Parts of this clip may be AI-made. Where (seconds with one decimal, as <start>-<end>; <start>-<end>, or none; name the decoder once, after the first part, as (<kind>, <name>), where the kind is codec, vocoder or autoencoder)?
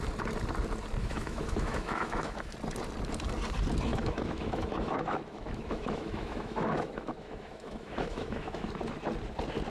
1.0-2.5 (autoencoder, DAC-VAE); 3.9-8.7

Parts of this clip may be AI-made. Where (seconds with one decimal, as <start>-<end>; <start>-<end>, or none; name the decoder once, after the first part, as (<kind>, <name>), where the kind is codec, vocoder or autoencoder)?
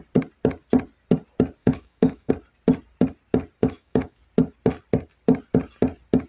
1.6-2.3 (autoencoder, DAC-VAE); 3.6-4.2